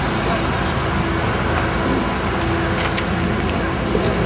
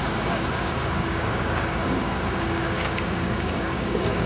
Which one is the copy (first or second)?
second